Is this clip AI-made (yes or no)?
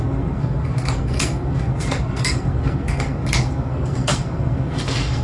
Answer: yes